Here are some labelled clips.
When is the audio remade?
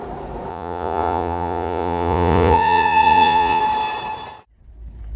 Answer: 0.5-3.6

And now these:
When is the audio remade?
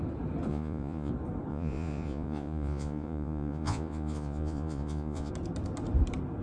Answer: 0.5-1.1; 1.5-5.3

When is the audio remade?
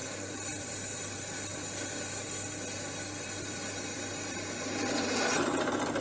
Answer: none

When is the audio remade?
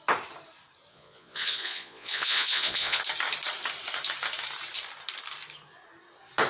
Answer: 0.9-3.0